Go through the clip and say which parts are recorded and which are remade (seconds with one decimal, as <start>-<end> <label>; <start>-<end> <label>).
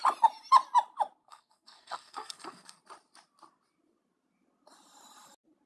0.0-1.2 recorded; 1.2-2.8 remade; 2.8-5.7 recorded